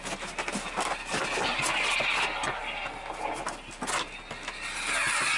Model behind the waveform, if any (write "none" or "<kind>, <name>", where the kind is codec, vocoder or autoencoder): none